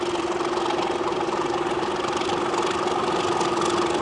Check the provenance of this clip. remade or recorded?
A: remade